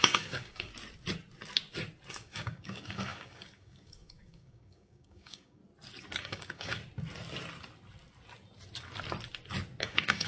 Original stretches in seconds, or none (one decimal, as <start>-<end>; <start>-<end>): 0.7-2.1; 5.6-6.2; 6.8-9.8